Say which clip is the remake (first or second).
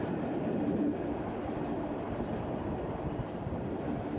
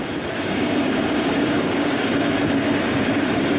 second